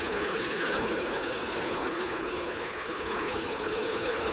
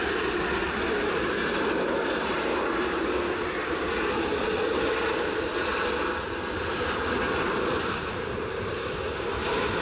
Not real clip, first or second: first